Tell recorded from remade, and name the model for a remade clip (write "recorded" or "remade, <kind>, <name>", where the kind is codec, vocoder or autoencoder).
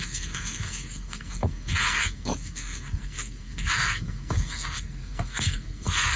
remade, codec, SNAC